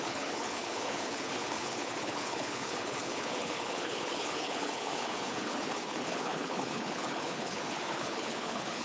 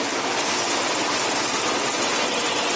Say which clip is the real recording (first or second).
second